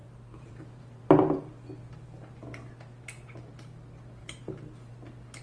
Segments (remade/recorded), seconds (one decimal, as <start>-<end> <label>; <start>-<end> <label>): 0.0-1.0 remade; 1.0-4.2 recorded; 4.2-4.9 remade; 4.9-5.4 recorded